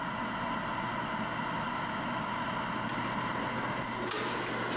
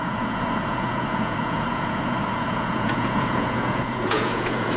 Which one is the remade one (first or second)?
second